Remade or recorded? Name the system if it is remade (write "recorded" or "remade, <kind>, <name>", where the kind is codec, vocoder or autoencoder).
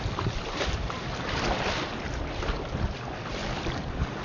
recorded